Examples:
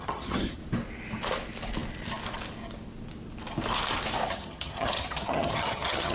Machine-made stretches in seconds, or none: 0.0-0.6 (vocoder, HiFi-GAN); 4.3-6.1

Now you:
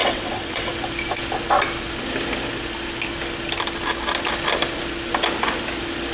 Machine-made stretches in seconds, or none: 0.0-0.7 (vocoder, WaveNeXt)